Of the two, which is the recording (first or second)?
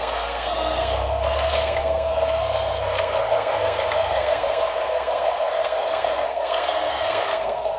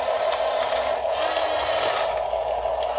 second